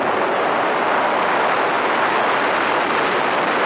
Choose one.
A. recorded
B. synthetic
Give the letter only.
A